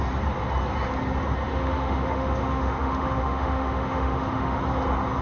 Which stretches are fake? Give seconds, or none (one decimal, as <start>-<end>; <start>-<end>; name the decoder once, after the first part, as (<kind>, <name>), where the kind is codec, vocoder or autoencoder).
1.5-4.6 (autoencoder, DAC-VAE)